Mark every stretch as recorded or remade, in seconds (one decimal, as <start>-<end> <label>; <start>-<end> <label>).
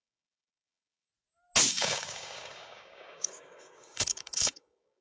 0.0-1.1 remade; 1.1-1.7 recorded; 1.7-5.0 remade